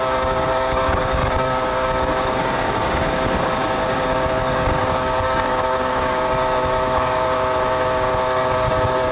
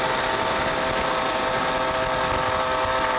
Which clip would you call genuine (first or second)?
second